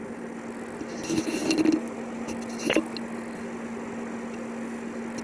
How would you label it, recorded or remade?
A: recorded